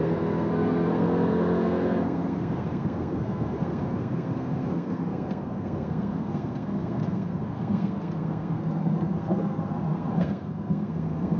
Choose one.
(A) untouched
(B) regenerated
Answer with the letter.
B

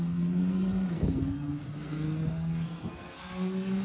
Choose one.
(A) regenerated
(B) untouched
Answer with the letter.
A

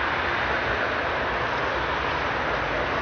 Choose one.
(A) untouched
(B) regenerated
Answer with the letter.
A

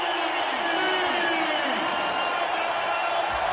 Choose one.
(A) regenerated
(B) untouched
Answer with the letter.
B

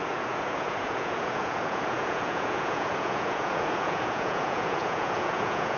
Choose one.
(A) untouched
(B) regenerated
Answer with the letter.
B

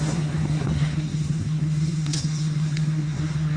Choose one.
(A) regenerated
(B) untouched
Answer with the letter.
A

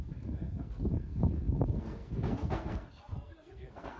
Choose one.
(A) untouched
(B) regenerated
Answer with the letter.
B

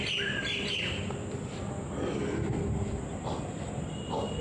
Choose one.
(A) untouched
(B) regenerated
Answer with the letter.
A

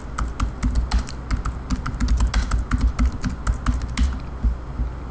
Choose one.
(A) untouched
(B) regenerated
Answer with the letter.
A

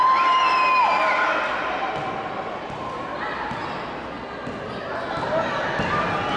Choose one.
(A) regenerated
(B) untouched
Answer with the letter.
B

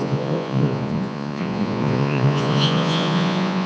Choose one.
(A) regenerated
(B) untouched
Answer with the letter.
A